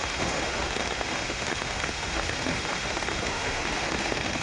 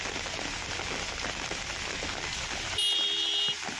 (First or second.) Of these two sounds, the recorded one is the second